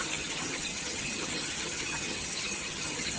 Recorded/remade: remade